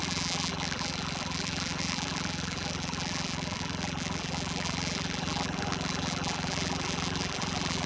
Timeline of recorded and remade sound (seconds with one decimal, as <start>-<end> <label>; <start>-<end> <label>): 0.0-7.9 remade

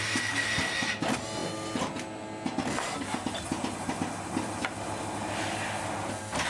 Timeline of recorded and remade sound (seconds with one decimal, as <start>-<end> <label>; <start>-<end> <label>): 0.0-6.5 recorded

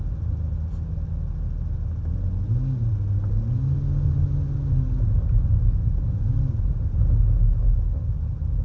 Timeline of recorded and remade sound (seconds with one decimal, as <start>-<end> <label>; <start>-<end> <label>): 0.0-8.6 recorded

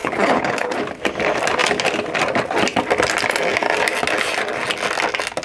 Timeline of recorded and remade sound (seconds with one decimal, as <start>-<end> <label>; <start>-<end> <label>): 0.0-0.8 remade; 0.8-5.4 recorded

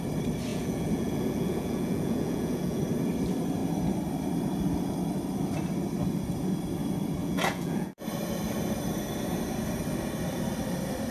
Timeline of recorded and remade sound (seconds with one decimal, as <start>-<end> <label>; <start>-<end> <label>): 0.0-0.5 recorded; 0.5-2.8 remade; 2.8-7.2 recorded; 7.2-8.0 remade; 8.0-11.1 recorded

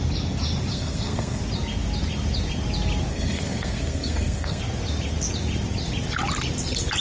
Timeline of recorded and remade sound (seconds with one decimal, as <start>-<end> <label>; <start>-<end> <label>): 0.0-0.7 recorded; 0.7-1.4 remade; 1.4-3.1 recorded; 3.1-4.6 remade; 4.6-7.0 recorded

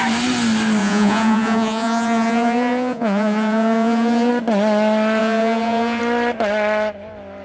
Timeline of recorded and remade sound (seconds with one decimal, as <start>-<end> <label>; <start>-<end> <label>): 0.0-0.8 recorded; 0.8-4.3 remade; 4.3-5.2 recorded; 5.2-6.0 remade; 6.0-7.4 recorded

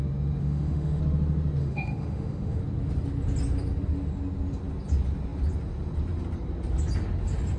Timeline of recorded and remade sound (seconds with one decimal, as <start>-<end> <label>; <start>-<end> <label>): 0.0-0.4 recorded; 0.4-1.0 remade; 1.0-1.6 recorded; 1.6-2.6 remade; 2.6-7.6 recorded